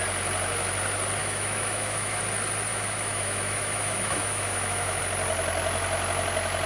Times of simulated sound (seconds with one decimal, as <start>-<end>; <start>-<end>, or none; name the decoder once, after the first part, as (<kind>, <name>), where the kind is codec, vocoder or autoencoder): 1.2-2.2 (autoencoder, DAC-VAE); 2.7-5.0